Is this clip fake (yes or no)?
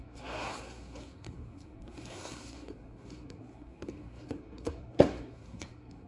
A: yes